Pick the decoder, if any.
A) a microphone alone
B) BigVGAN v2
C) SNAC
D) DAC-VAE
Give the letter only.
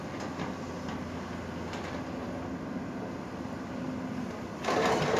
A